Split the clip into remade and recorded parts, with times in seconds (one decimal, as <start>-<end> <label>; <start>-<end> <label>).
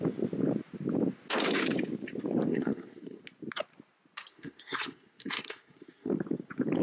0.0-2.5 recorded; 2.5-3.2 remade; 3.2-4.3 recorded; 4.3-6.1 remade; 6.1-6.8 recorded